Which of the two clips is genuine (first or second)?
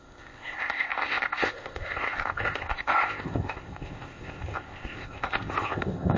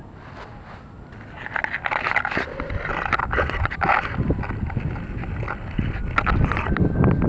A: second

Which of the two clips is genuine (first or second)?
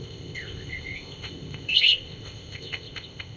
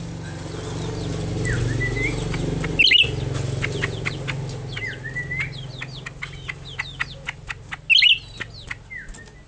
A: second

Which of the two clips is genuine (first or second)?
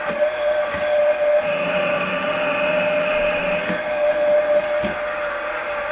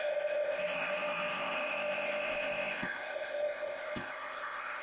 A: first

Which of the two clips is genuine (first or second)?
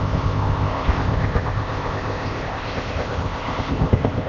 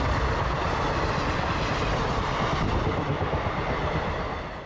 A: second